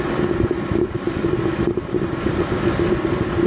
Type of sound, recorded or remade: recorded